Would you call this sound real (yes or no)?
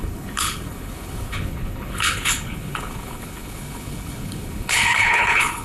no